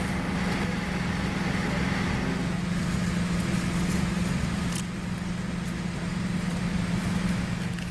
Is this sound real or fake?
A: real